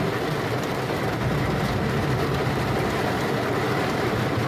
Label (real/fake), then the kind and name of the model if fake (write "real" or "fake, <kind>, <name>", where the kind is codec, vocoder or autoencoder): real